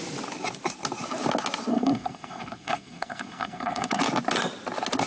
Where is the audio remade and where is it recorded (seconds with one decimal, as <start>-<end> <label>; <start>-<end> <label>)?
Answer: 0.0-1.7 recorded; 1.7-4.0 remade; 4.0-5.1 recorded